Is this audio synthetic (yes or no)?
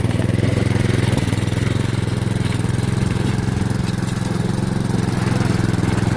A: no